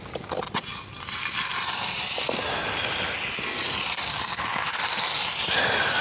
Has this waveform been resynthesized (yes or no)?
no